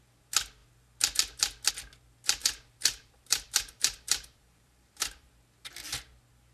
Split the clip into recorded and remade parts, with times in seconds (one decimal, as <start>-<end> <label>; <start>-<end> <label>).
0.0-2.4 recorded; 2.4-5.3 remade; 5.3-6.5 recorded